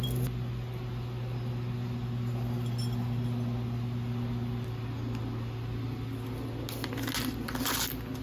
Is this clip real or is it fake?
real